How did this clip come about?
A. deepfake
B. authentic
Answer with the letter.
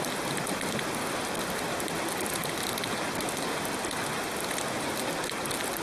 B